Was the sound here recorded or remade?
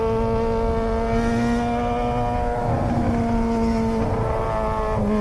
recorded